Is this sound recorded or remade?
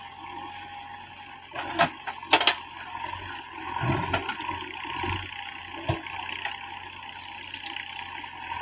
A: recorded